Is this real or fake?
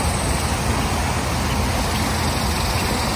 real